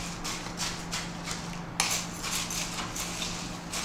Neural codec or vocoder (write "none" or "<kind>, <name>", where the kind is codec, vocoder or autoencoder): none